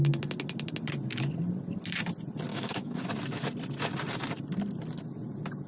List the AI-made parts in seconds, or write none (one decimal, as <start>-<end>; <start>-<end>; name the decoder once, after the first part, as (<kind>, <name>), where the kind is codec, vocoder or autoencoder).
2.5-3.0 (autoencoder, DAC-VAE)